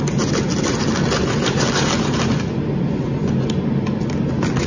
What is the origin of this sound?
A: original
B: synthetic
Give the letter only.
A